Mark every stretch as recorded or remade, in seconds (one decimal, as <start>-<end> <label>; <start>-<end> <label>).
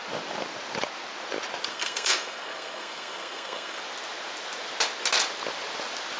0.0-1.7 recorded; 1.7-3.8 remade; 3.8-6.2 recorded